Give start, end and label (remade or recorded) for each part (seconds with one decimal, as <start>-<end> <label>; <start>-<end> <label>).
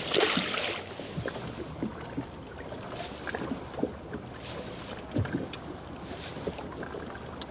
0.0-7.5 recorded